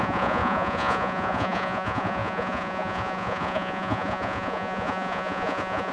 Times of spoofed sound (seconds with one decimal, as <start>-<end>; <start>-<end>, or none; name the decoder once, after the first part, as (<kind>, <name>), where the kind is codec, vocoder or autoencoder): 0.0-5.9 (vocoder, Vocos)